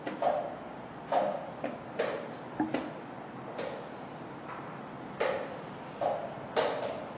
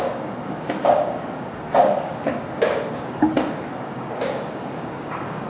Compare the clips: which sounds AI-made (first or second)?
second